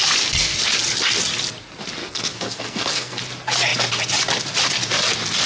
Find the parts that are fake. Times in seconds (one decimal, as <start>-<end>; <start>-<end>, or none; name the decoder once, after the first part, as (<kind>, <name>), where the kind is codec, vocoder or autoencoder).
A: 2.0-3.2 (codec, SNAC)